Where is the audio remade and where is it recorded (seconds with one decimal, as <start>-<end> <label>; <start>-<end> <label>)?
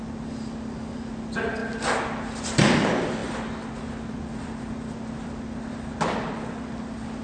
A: 0.0-7.2 recorded